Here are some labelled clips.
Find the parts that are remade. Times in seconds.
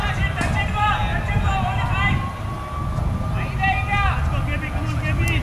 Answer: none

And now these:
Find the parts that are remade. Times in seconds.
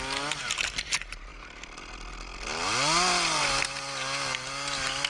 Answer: none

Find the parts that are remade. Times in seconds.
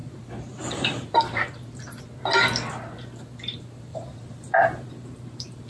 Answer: 0.0-2.0; 3.9-5.7